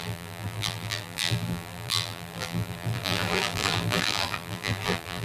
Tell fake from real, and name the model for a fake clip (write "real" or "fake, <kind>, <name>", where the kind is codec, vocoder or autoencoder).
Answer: fake, vocoder, BigVGAN v2